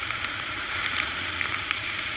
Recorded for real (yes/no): no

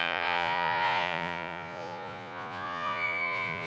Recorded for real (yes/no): no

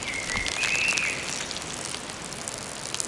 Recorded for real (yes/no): yes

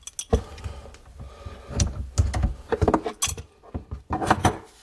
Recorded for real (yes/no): yes